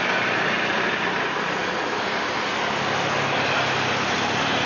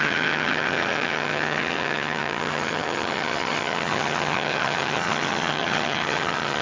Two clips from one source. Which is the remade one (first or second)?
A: second